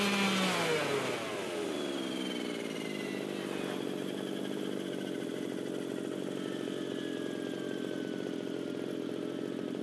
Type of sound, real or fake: real